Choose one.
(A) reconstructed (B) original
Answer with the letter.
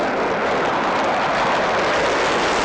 B